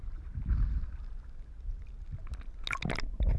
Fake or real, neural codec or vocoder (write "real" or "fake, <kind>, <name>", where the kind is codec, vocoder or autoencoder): real